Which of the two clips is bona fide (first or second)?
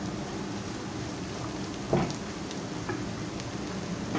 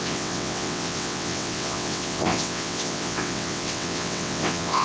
first